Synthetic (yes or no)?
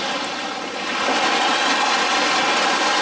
no